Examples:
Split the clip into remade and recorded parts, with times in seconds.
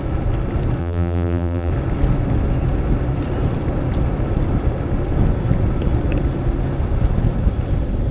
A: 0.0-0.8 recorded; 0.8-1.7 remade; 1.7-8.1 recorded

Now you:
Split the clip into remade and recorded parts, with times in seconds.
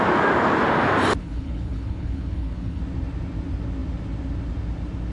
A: 0.0-1.2 recorded; 1.2-2.8 remade; 2.8-5.1 recorded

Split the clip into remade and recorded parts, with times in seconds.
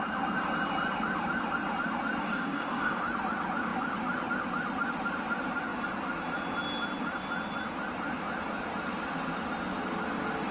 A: 0.0-2.2 recorded; 2.2-3.0 remade; 3.0-10.5 recorded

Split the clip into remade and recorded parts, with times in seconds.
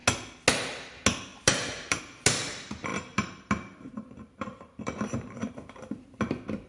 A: 0.0-1.3 recorded; 1.3-2.0 remade; 2.0-2.9 recorded; 2.9-5.5 remade; 5.5-6.7 recorded